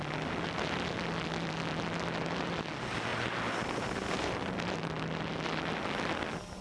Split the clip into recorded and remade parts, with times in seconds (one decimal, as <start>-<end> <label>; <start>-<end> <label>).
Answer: 0.0-3.1 recorded; 3.1-5.2 remade; 5.2-6.6 recorded